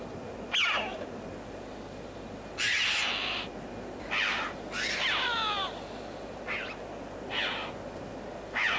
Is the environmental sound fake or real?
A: real